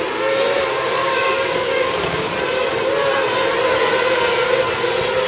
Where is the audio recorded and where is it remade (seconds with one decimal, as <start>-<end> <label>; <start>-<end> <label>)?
0.0-1.0 recorded; 1.0-2.3 remade; 2.3-5.3 recorded

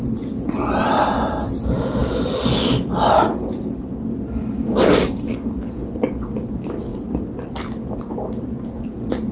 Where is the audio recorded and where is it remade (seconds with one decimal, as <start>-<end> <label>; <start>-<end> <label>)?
0.0-4.4 recorded; 4.4-5.7 remade; 5.7-9.3 recorded

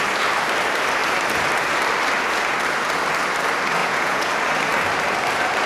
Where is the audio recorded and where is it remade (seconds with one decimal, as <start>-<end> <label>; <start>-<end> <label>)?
0.0-3.8 recorded; 3.8-4.3 remade; 4.3-5.7 recorded